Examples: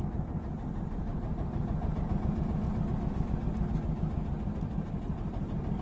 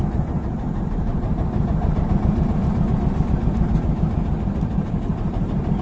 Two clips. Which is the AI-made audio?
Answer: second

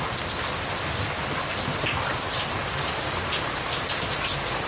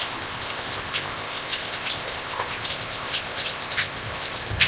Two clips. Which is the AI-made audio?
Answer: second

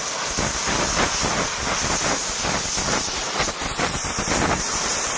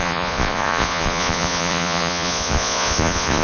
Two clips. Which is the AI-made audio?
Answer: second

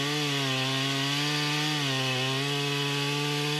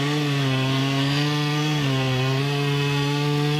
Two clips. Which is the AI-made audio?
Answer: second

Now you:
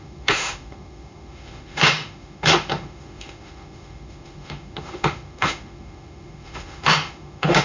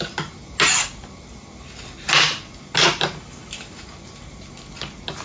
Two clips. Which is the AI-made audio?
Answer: first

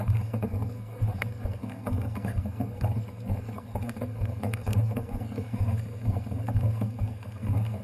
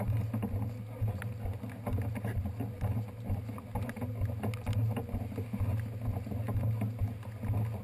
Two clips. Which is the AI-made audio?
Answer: first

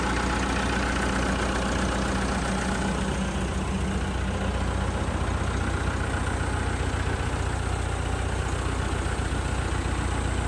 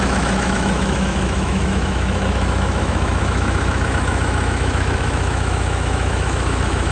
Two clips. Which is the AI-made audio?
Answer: second